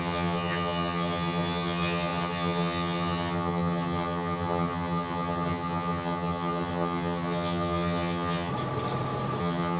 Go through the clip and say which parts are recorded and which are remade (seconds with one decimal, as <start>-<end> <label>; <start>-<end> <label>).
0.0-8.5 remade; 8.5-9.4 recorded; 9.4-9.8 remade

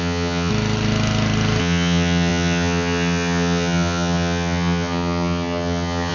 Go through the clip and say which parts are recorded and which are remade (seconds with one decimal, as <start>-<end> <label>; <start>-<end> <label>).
0.0-0.5 remade; 0.5-1.6 recorded; 1.6-6.1 remade

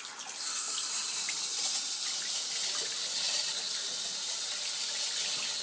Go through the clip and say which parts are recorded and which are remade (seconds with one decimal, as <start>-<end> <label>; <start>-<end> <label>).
0.0-5.6 recorded

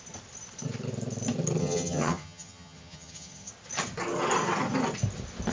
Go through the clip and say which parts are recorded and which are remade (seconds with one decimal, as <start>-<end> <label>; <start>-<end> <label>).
0.0-1.6 recorded; 1.6-3.5 remade; 3.5-5.5 recorded